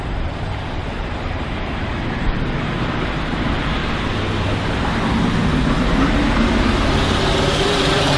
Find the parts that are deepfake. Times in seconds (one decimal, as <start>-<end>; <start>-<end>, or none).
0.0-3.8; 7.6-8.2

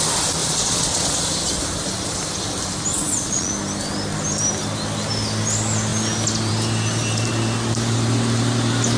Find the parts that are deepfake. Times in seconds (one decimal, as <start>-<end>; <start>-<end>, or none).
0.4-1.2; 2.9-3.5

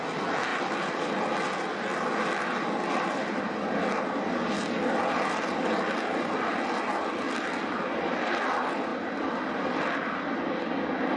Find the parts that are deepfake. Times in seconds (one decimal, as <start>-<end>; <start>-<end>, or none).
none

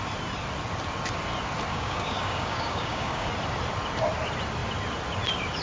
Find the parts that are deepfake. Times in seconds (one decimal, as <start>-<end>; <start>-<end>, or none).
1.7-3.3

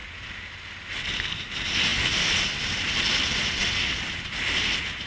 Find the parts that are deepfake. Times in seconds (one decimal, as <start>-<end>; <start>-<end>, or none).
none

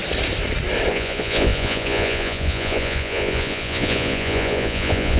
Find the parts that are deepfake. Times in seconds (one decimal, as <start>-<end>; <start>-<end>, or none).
0.9-5.2